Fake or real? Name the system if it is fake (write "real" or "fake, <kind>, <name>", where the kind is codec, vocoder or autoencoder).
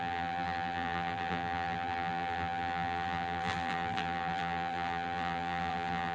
fake, vocoder, BigVGAN v2